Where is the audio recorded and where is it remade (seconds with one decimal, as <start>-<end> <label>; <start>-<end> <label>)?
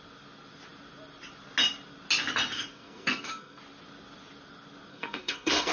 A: 0.0-2.7 recorded; 2.7-3.6 remade; 3.6-4.9 recorded; 4.9-5.7 remade